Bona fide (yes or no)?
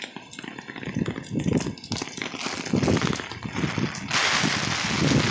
yes